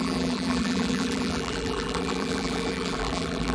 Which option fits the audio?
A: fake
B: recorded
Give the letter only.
A